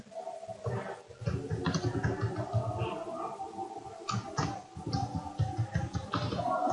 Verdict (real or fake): real